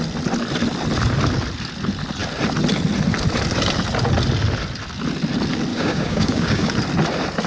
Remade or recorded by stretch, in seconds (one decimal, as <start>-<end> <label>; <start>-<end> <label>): 0.0-5.7 recorded; 5.7-6.7 remade; 6.7-7.5 recorded